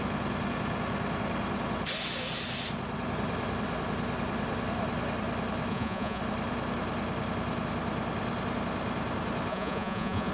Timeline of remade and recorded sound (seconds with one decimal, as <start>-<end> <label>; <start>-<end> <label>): 0.0-5.7 recorded; 5.7-6.2 remade; 6.2-9.5 recorded; 9.5-10.3 remade